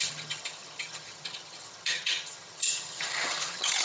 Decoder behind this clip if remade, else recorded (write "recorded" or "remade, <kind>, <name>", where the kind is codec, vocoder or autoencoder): remade, vocoder, HiFi-GAN